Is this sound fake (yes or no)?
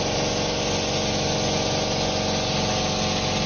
no